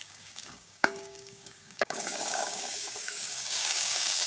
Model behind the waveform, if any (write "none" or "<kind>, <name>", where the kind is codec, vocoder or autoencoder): codec, DAC